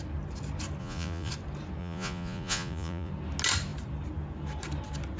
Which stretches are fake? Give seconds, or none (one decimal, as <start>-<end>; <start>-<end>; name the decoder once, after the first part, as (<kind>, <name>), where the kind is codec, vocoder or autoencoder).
0.8-1.3 (vocoder, Vocos); 1.8-3.1